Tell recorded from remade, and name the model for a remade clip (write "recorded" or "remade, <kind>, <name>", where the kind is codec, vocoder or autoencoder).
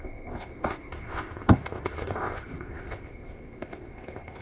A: remade, codec, ZipCodec